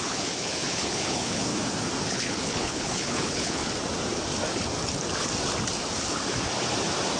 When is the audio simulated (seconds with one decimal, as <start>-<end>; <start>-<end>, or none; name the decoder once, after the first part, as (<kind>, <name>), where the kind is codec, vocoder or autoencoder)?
0.0-1.5 (codec, HILCodec); 2.1-3.6